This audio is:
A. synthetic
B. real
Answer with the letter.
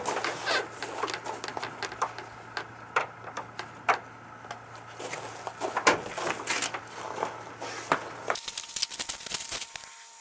B